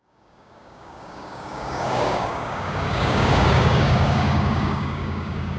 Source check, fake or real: fake